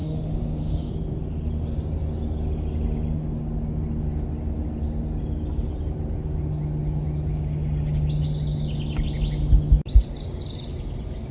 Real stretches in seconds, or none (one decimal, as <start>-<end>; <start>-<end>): 0.9-11.3